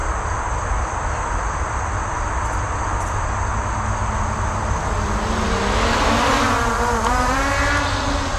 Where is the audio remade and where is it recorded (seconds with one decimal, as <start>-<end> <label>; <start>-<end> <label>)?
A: 0.0-8.4 recorded